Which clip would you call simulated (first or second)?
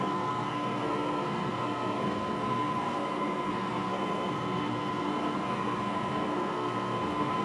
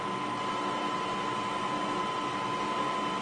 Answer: first